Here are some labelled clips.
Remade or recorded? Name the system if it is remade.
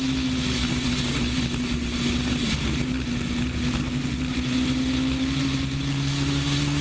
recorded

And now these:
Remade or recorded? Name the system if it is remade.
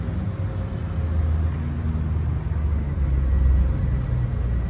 recorded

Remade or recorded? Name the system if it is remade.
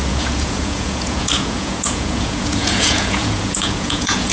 remade, vocoder, Vocos